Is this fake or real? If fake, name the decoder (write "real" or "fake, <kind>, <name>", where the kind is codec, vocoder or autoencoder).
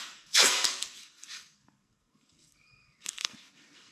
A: fake, codec, SNAC